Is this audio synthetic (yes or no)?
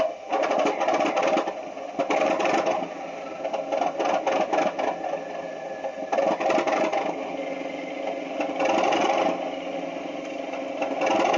no